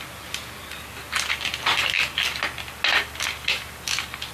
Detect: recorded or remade recorded